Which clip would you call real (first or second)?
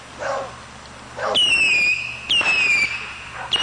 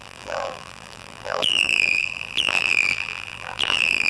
first